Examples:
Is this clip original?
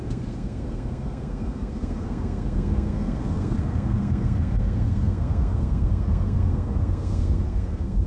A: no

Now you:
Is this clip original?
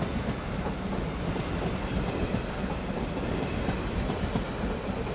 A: yes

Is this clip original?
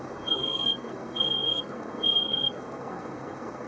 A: no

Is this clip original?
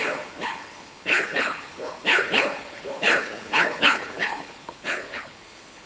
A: no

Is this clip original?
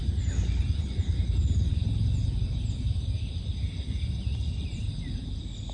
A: yes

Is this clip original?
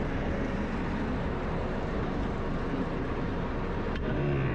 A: yes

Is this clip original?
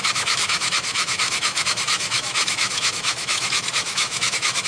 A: no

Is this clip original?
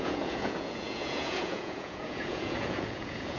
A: no